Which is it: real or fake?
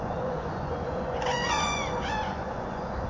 fake